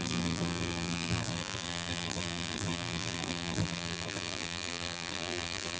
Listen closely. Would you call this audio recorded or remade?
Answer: remade